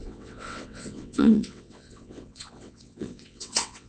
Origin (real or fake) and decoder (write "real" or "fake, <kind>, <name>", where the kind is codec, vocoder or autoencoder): fake, vocoder, WaveNeXt